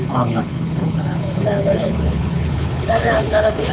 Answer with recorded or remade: remade